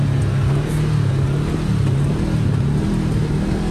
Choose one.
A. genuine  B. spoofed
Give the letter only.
A